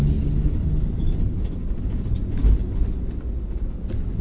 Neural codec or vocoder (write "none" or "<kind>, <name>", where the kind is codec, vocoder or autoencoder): none